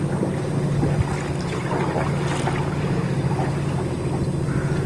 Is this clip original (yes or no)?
yes